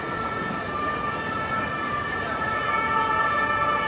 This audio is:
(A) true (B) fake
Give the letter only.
A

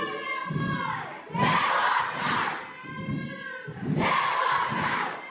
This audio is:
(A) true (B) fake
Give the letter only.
A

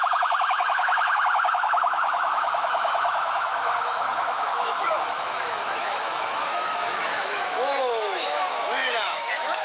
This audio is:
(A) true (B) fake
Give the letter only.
B